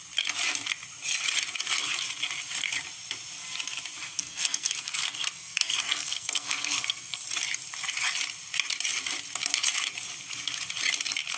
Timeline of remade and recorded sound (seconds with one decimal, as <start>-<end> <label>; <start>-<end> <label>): 0.0-4.0 recorded; 4.0-7.2 remade; 7.2-11.4 recorded